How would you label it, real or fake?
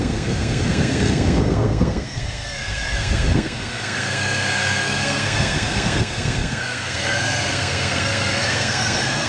fake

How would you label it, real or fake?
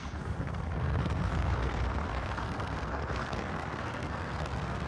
fake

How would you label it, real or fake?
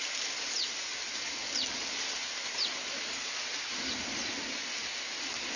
real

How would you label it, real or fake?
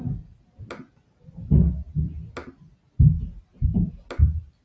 real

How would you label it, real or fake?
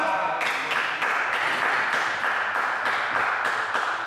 real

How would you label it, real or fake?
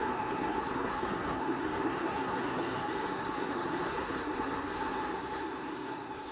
fake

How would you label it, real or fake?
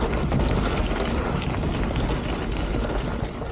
real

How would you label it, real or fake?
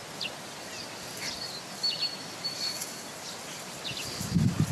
real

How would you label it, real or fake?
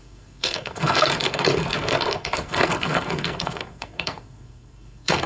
fake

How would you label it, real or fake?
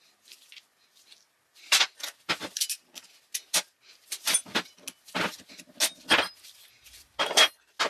real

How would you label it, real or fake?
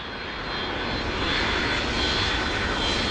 real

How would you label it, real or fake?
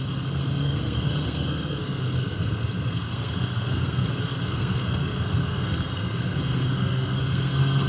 fake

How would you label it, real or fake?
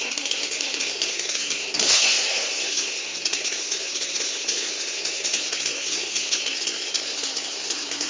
fake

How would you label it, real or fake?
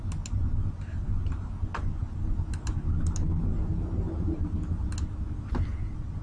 real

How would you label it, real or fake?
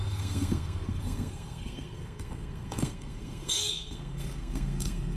fake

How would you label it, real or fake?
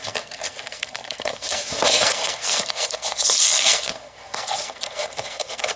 fake